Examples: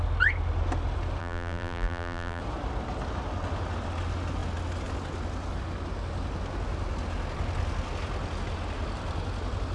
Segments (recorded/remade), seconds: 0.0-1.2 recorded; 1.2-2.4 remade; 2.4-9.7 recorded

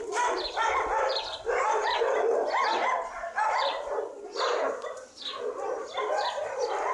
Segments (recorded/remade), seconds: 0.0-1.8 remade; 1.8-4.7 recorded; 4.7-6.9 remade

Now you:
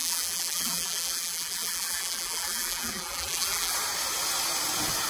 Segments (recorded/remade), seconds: 0.0-3.7 remade; 3.7-5.1 recorded

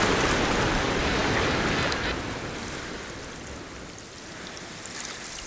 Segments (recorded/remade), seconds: 0.0-5.5 recorded

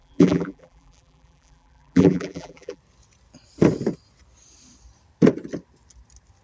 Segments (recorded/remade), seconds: 0.0-2.8 remade; 2.8-6.4 recorded

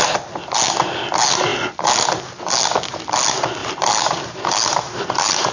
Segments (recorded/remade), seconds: 0.0-3.6 recorded; 3.6-5.5 remade

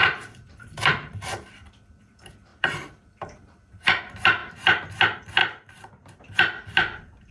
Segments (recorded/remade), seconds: 0.0-1.5 remade; 1.5-2.5 recorded; 2.5-4.0 remade; 4.0-4.4 recorded; 4.4-4.9 remade; 4.9-5.4 recorded; 5.4-6.2 remade; 6.2-7.3 recorded